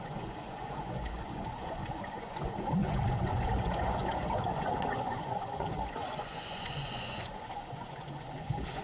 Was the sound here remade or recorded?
remade